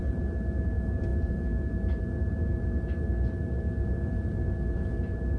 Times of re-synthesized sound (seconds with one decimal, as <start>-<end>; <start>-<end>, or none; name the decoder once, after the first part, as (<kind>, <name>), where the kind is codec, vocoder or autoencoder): none